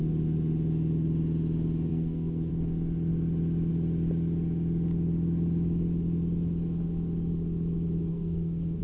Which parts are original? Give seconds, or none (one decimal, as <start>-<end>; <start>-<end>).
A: 0.0-1.9; 2.5-8.1